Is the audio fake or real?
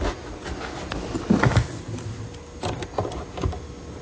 real